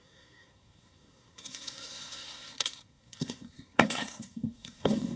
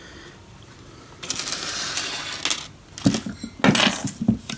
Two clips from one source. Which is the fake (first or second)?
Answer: first